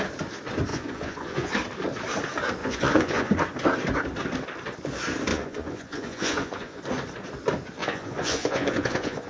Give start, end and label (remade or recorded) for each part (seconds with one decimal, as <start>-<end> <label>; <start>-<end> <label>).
0.0-0.7 recorded; 0.7-1.5 remade; 1.5-2.6 recorded; 2.6-3.3 remade; 3.3-5.3 recorded; 5.3-6.8 remade; 6.8-7.8 recorded; 7.8-9.3 remade